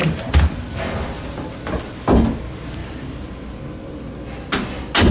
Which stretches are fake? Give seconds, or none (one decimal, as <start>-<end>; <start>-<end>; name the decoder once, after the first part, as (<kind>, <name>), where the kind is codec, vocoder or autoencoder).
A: 0.0-0.5 (vocoder, BigVGAN v2); 2.8-3.4